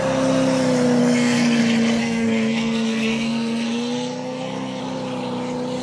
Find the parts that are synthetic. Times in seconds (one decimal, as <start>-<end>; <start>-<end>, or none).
1.0-1.6; 2.0-4.8